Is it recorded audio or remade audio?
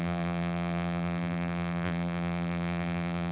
remade